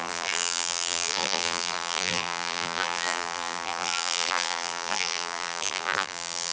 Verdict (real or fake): fake